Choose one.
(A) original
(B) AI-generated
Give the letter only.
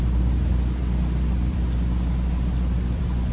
B